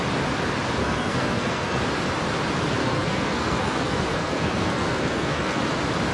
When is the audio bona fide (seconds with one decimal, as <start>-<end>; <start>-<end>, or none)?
0.0-0.8; 1.8-2.8; 5.6-6.1